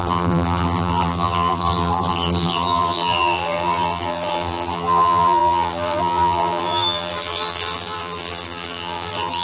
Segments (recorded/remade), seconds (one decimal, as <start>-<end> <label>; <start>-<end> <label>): 0.0-9.4 remade